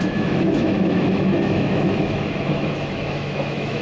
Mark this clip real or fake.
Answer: fake